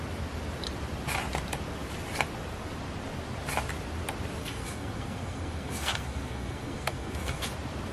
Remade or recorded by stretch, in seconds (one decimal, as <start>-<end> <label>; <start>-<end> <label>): 0.0-4.4 recorded; 4.4-7.5 remade; 7.5-7.9 recorded